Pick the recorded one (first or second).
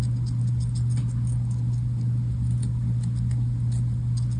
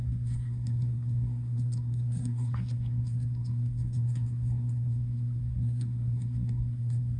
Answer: first